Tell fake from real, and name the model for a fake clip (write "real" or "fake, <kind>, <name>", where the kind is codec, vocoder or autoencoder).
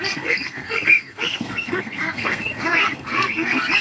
fake, codec, SNAC